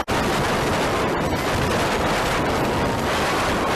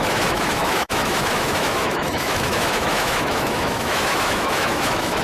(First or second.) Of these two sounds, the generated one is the second